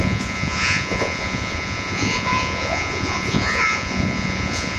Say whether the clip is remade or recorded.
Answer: remade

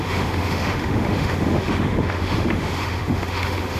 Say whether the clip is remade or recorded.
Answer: remade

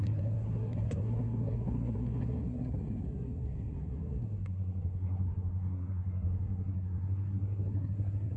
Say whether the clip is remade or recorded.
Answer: remade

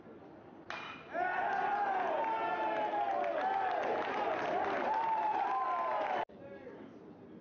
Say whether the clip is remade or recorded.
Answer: recorded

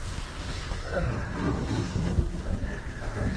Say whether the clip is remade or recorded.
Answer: remade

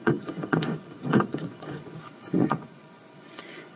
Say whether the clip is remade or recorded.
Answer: remade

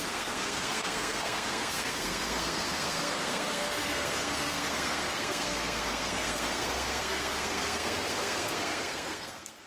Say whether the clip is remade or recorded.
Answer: remade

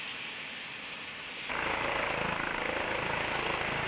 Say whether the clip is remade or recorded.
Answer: recorded